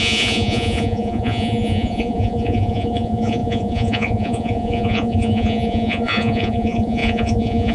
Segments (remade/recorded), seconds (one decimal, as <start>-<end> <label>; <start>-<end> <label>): 0.0-7.7 remade